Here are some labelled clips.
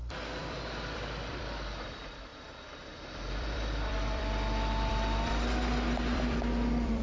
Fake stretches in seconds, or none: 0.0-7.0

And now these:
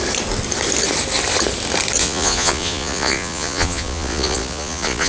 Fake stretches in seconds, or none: 2.0-5.1

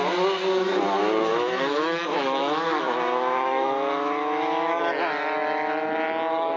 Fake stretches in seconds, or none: 1.3-4.8

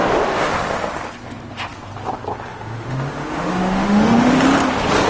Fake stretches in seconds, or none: 0.0-0.5; 2.5-4.3